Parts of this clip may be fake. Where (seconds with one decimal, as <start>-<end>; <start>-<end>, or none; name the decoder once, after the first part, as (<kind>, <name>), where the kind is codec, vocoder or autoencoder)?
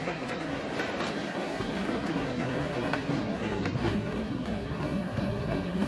0.0-0.6 (codec, SNAC); 1.1-5.9